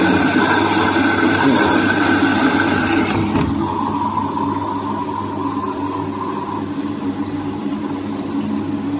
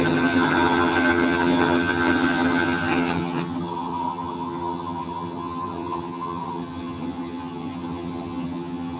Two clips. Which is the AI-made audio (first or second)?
second